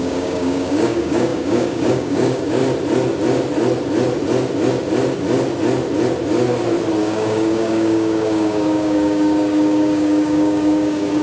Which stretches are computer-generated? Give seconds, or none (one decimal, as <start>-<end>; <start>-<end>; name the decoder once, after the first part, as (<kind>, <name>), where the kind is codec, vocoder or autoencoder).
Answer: 0.0-2.6 (codec, DAC); 7.0-11.2